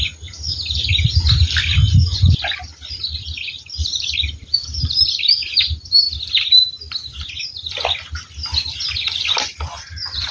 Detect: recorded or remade recorded